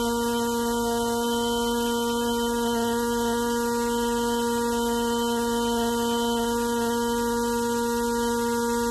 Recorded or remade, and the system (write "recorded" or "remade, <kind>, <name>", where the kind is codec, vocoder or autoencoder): recorded